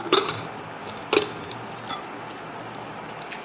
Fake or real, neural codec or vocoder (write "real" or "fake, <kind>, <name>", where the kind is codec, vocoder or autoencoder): real